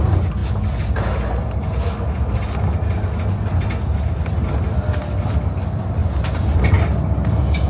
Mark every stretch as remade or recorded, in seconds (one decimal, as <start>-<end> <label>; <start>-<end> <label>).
0.0-6.0 recorded; 6.0-6.8 remade; 6.8-7.7 recorded